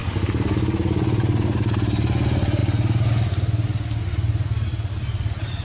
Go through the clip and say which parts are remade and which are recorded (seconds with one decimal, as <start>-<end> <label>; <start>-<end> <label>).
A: 0.0-5.6 recorded